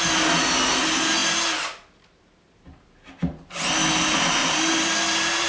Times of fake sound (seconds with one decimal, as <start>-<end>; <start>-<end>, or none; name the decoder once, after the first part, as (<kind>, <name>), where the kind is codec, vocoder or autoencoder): 4.4-5.5 (vocoder, BigVGAN v2)